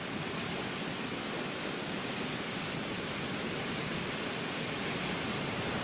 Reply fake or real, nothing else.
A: real